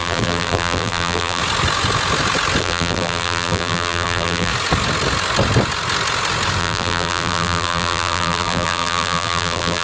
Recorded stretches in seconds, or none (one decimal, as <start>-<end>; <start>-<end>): 1.4-2.6; 4.5-6.6